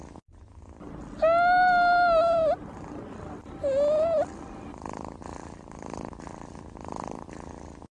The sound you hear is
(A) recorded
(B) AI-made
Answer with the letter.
A